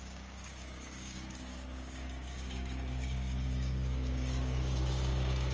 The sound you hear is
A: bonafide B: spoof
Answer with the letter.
B